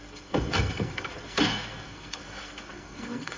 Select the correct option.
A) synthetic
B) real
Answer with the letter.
A